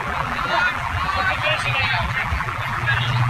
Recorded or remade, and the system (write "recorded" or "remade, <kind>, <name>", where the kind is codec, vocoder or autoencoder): remade, vocoder, BigVGAN v2